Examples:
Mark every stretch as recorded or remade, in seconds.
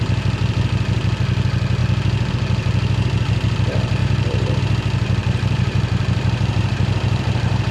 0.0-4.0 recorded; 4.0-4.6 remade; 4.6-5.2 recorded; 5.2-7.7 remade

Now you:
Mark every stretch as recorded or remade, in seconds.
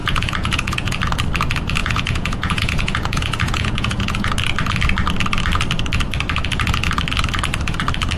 0.0-1.0 remade; 1.0-1.8 recorded; 1.8-4.3 remade; 4.3-8.2 recorded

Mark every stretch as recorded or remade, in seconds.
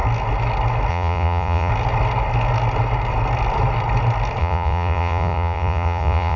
0.0-0.9 recorded; 0.9-1.7 remade; 1.7-4.4 recorded; 4.4-6.4 remade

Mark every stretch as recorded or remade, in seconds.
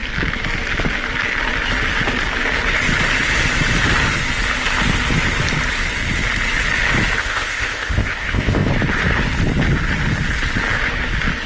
0.0-7.2 recorded; 7.2-8.7 remade; 8.7-11.5 recorded